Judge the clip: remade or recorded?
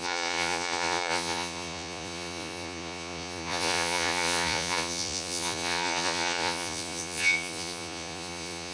remade